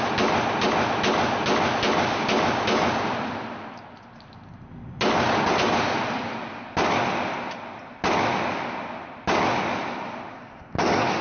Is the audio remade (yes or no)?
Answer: no